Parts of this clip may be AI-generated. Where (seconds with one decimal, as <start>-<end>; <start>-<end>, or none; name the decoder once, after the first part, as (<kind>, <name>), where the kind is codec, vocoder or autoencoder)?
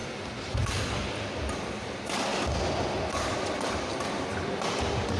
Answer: none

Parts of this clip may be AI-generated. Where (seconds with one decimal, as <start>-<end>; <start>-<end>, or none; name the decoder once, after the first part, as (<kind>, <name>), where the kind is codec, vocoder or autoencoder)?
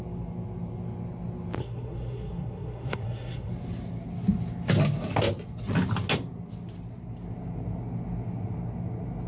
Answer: 1.6-3.5 (codec, SNAC)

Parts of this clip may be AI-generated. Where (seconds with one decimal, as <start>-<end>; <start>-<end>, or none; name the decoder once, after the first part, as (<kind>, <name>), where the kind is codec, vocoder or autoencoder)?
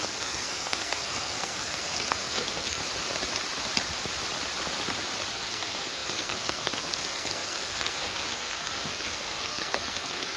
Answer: 0.0-2.8 (codec, SNAC); 5.3-10.4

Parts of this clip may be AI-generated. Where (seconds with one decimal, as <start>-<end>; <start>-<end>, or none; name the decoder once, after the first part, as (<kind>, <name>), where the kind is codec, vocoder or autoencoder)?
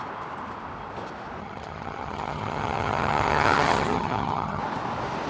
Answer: 1.4-4.6 (vocoder, HiFi-GAN)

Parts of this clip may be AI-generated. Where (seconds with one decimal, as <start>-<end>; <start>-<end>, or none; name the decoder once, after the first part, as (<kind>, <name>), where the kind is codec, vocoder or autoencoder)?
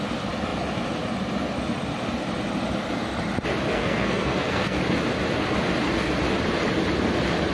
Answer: 3.7-4.8 (codec, SNAC)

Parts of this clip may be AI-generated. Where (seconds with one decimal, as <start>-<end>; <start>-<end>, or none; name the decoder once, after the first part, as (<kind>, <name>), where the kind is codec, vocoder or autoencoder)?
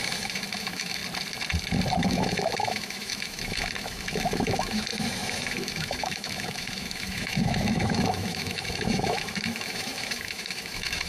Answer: 0.0-1.0 (autoencoder, DAC-VAE); 2.0-11.1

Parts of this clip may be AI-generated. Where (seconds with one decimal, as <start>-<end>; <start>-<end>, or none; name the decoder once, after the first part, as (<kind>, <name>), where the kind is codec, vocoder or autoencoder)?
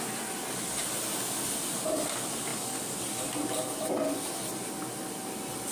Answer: none